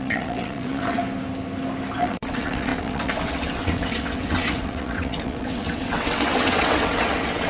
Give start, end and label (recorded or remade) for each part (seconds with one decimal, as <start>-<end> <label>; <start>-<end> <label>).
0.0-1.0 remade; 1.0-2.0 recorded; 2.0-7.5 remade